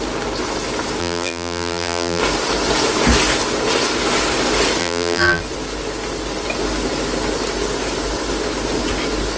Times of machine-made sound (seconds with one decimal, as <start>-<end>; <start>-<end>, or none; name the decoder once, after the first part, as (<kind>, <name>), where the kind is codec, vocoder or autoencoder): 1.0-2.2 (vocoder, BigVGAN v2); 4.8-5.4